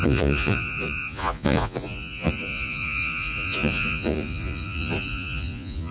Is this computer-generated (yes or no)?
yes